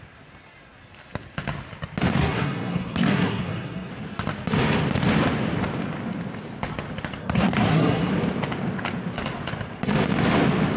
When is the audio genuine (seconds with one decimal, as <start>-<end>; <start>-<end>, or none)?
0.0-2.2; 3.9-7.2; 8.1-10.8